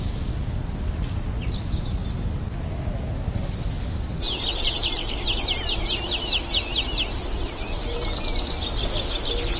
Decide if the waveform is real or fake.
real